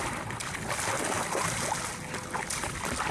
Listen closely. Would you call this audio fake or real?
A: real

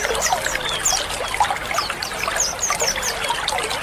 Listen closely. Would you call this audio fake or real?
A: real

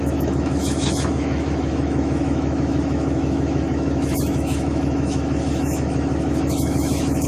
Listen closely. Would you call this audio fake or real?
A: fake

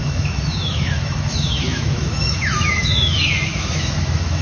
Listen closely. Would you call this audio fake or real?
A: fake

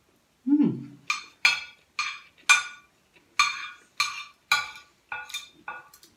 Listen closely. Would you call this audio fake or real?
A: real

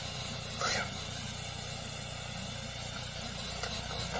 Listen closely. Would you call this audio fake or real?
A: real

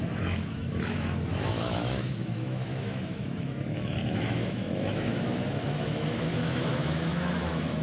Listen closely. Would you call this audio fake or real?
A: fake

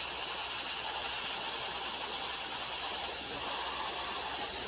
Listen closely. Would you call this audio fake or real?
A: real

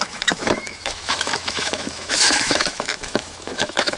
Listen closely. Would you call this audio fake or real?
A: fake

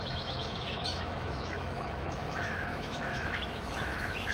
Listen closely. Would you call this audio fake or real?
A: fake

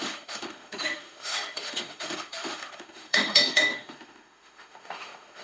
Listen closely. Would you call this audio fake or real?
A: fake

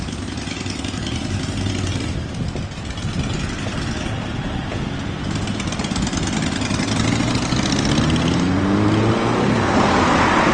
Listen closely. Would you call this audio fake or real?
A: real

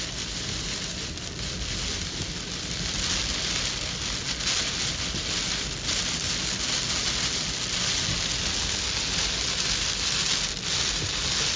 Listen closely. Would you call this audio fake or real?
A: real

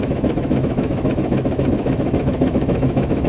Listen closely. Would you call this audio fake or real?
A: fake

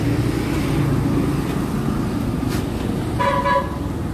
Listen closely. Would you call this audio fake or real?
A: real